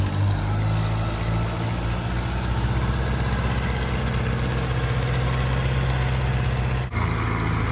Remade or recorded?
recorded